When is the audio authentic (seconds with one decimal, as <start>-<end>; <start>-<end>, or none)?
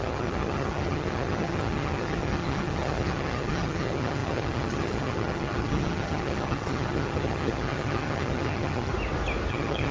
8.9-9.5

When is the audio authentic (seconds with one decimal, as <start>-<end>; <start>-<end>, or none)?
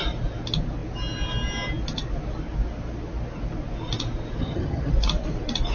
0.0-4.4; 4.9-5.7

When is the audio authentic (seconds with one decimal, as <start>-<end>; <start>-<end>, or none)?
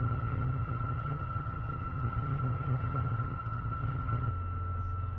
4.3-5.2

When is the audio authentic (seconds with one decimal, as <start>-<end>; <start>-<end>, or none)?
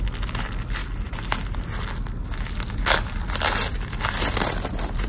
0.0-5.1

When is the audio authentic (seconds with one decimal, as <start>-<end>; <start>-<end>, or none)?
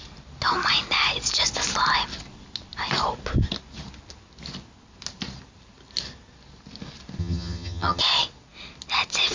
0.0-7.2; 8.0-9.3